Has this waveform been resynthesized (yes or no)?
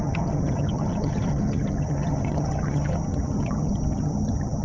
yes